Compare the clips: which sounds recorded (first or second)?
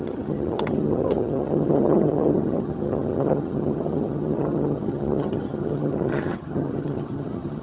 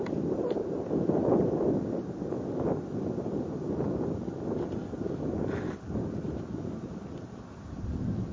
second